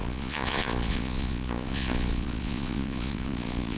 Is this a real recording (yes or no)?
no